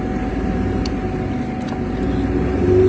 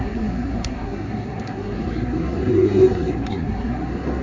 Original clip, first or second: first